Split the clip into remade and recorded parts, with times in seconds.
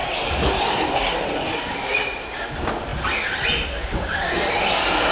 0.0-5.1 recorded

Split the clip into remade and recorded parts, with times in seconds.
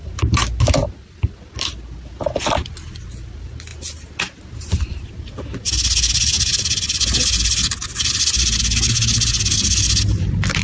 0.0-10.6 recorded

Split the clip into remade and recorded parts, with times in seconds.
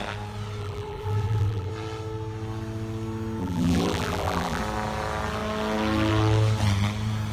0.0-0.6 recorded; 0.6-1.7 remade; 1.7-3.4 recorded; 3.4-4.6 remade; 4.6-7.3 recorded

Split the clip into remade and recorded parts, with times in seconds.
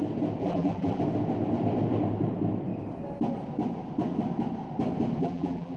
0.0-0.4 recorded; 0.4-1.0 remade; 1.0-5.2 recorded; 5.2-5.8 remade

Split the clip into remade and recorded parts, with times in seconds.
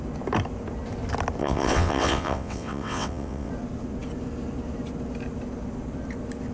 0.0-1.4 recorded; 1.4-3.5 remade; 3.5-6.5 recorded